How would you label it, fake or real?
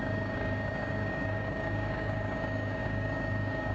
fake